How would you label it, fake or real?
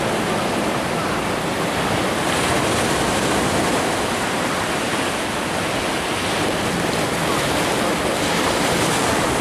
real